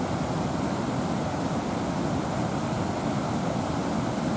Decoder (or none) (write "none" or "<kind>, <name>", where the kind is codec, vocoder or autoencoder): none